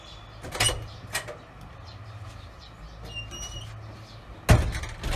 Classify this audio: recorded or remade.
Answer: recorded